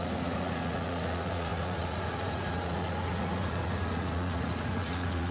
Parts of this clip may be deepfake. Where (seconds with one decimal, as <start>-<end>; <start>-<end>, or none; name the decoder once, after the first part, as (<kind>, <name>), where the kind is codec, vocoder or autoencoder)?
0.0-5.3 (vocoder, Vocos)